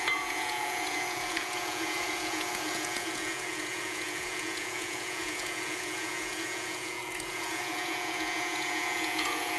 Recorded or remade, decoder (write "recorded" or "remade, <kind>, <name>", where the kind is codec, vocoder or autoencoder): remade, vocoder, Vocos